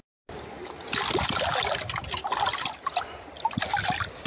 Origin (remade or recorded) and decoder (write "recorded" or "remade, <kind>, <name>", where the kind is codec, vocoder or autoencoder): recorded